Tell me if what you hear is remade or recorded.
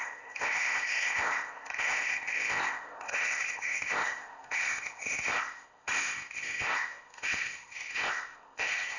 remade